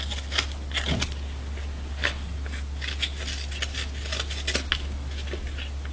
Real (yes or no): yes